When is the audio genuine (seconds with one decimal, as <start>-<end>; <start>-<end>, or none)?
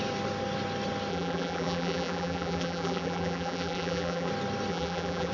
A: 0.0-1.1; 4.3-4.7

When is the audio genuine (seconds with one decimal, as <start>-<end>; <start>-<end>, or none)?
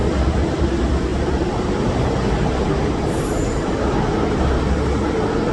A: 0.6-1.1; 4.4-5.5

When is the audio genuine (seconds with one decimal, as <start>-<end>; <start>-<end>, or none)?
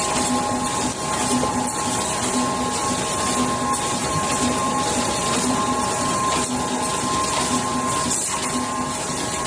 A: 0.0-4.0; 6.3-9.5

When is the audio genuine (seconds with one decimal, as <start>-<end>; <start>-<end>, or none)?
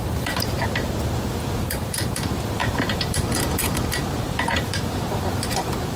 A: 0.7-1.3